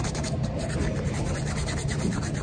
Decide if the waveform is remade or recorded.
remade